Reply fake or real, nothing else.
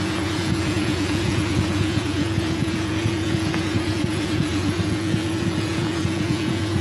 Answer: fake